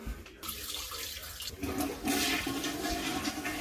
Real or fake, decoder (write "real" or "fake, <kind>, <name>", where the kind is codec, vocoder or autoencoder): real